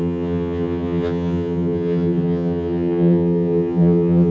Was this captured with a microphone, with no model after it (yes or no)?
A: no